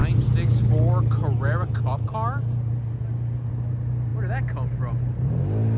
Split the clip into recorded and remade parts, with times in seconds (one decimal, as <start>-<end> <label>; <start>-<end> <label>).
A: 0.0-5.8 recorded